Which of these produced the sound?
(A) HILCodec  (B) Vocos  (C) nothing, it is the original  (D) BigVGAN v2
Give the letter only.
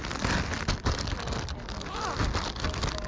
C